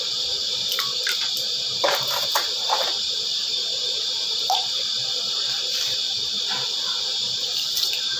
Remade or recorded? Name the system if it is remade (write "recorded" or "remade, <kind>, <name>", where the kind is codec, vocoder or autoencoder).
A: remade, vocoder, BigVGAN v2